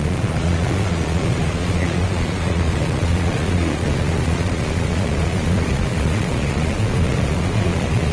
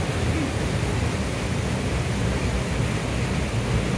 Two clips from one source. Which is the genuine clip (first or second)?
second